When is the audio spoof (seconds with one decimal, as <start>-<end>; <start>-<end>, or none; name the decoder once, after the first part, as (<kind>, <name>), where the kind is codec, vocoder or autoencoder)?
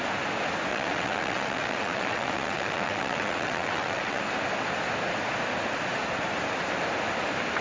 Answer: 0.7-4.2 (vocoder, WaveNeXt)